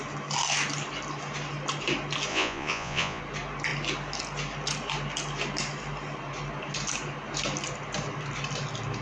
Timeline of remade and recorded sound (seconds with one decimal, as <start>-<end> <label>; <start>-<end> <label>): 0.0-2.3 recorded; 2.3-3.2 remade; 3.2-9.0 recorded